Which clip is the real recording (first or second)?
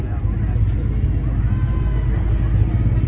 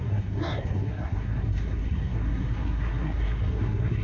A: first